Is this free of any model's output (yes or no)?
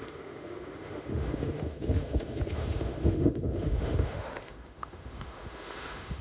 no